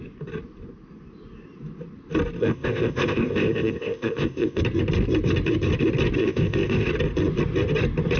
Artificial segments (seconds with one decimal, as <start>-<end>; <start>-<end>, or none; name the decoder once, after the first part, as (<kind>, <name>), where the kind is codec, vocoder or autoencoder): 2.4-4.6 (codec, ZipCodec); 6.2-6.9